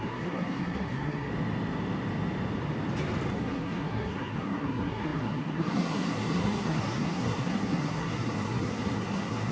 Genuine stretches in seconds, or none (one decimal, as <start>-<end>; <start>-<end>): 1.3-3.3